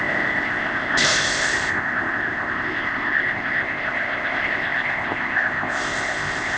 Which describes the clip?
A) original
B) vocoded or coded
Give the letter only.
B